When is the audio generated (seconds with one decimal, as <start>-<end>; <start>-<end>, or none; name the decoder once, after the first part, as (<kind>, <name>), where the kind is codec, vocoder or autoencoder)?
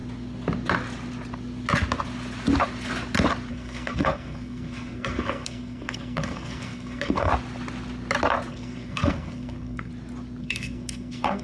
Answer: 3.5-7.3 (codec, SNAC); 8.5-9.9; 10.4-11.4